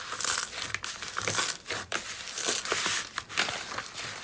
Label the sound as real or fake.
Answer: fake